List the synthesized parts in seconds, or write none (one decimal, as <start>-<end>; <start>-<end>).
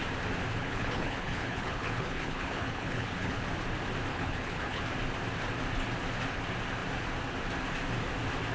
0.6-3.4; 4.1-4.8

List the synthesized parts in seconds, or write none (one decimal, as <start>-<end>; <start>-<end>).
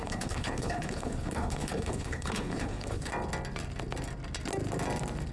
0.0-3.1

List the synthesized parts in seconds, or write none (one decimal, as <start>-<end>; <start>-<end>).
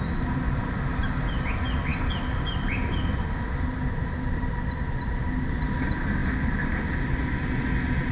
none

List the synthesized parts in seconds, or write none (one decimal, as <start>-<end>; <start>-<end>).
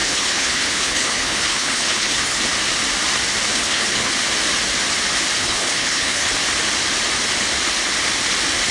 0.0-2.4; 3.5-4.1; 5.4-6.3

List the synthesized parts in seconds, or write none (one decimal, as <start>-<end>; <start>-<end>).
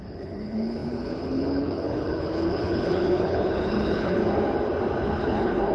0.0-4.2; 5.0-5.7